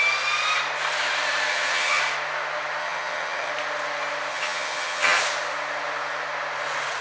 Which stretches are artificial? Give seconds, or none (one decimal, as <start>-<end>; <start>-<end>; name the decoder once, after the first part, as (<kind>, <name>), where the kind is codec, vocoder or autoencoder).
1.5-2.0 (vocoder, HiFi-GAN); 2.8-3.5; 4.3-5.2